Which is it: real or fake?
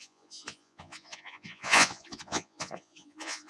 fake